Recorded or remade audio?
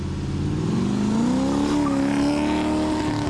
recorded